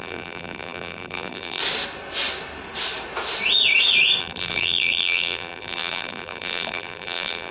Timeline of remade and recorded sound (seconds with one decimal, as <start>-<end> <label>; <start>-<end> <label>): 0.0-1.6 remade; 1.6-4.2 recorded; 4.2-7.5 remade